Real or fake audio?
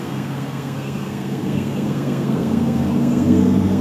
fake